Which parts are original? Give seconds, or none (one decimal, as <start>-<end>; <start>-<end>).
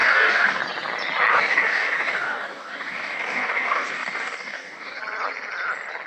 0.6-1.3; 5.0-6.1